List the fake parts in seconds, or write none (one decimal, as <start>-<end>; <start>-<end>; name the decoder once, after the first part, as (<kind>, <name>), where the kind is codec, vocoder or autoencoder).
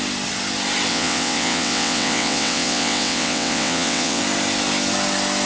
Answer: 0.9-4.2 (vocoder, WaveNeXt)